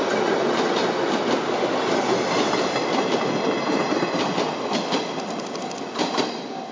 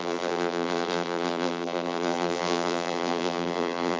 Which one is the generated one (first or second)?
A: second